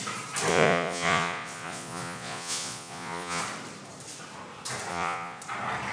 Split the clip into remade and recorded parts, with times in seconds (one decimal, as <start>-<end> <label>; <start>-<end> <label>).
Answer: 0.0-0.5 recorded; 0.5-3.4 remade; 3.4-4.9 recorded; 4.9-5.4 remade; 5.4-5.9 recorded